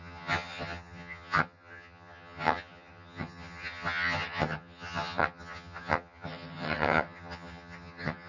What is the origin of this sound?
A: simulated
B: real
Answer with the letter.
A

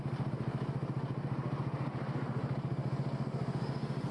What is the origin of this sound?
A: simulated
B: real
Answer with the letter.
B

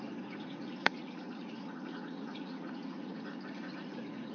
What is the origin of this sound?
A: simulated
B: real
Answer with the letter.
A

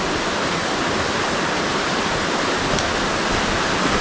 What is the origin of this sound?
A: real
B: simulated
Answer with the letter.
A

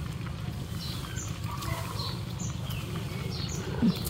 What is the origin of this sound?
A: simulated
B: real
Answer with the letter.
A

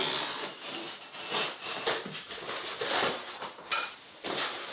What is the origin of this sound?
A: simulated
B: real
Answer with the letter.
B